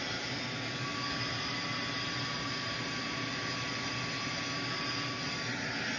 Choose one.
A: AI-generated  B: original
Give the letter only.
B